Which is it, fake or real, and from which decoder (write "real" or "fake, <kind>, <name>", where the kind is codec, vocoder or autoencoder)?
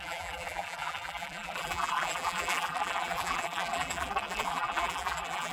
fake, vocoder, BigVGAN v2